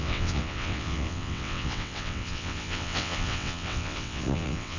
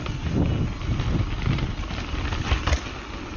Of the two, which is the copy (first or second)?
first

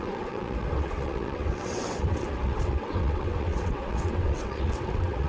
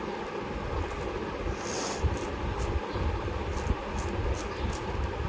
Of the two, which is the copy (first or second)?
first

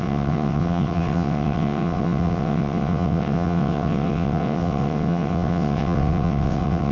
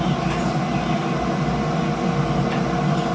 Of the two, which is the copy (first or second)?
first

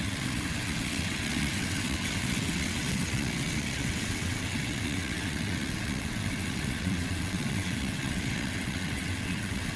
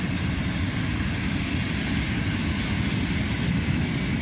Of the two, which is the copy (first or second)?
first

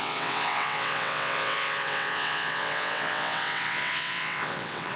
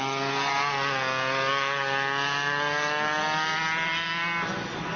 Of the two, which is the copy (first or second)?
first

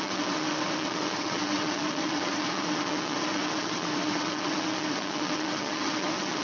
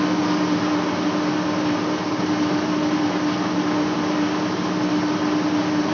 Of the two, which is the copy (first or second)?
first